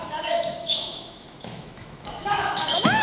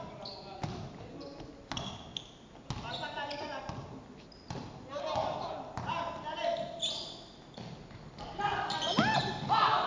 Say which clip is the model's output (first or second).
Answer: first